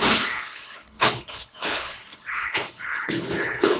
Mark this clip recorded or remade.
remade